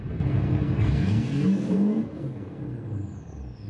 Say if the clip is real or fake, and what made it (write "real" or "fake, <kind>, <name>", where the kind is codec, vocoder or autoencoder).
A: fake, codec, SNAC